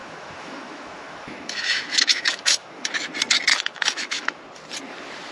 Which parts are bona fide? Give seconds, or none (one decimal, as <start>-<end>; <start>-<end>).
2.9-3.5; 4.4-5.3